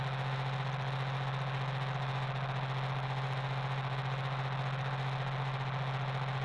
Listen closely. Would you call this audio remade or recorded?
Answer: recorded